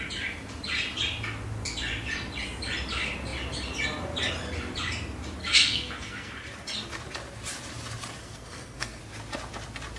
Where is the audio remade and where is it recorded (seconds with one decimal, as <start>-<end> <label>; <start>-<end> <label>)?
0.0-5.4 recorded; 5.4-6.3 remade; 6.3-8.2 recorded; 8.2-9.0 remade; 9.0-10.0 recorded